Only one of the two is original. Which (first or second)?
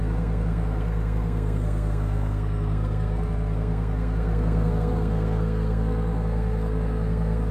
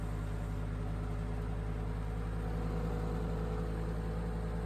second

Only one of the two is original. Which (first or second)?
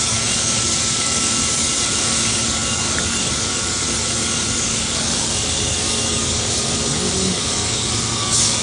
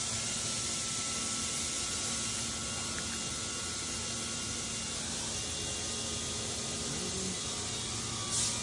second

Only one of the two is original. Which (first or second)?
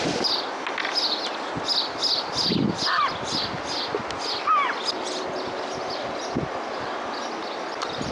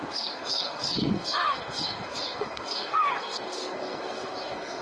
first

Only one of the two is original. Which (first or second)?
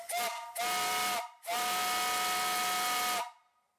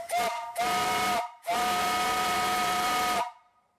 first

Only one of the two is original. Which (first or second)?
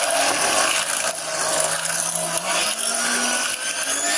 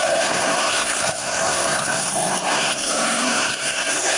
first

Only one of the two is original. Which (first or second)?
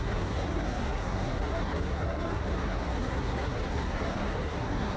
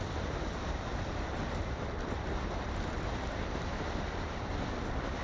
second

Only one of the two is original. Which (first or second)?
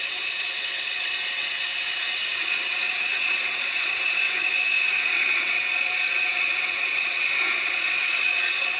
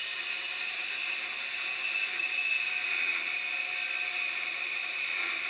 second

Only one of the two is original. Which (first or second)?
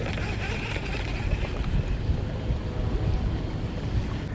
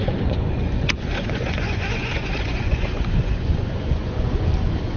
first